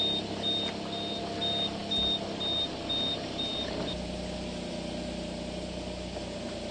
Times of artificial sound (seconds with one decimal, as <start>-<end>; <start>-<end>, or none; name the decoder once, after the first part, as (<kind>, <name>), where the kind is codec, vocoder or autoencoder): none